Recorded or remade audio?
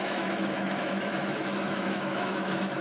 remade